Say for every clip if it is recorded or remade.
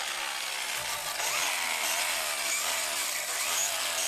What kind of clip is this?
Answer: recorded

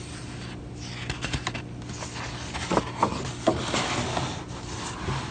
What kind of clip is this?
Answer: recorded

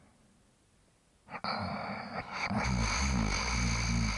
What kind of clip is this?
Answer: recorded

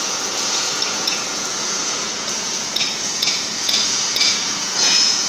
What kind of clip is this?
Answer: remade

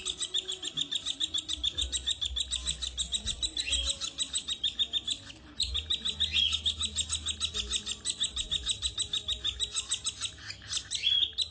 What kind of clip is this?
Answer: recorded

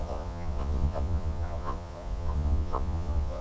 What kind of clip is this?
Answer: remade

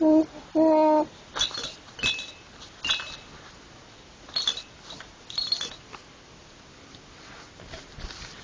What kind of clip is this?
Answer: recorded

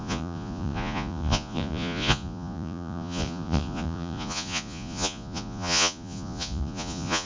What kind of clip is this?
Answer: remade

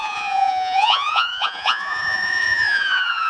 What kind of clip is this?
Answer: remade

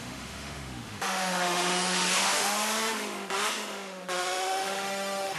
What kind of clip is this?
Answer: remade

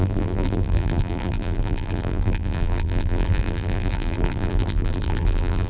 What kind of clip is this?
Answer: remade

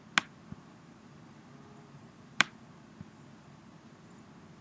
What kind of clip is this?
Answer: recorded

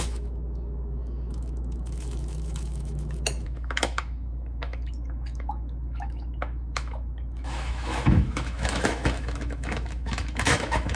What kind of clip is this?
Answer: remade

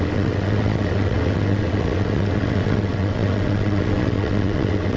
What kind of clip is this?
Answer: remade